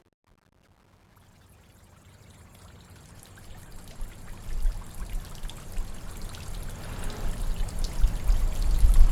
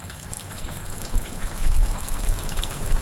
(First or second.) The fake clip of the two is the second